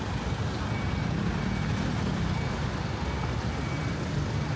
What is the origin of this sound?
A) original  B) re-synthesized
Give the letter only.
A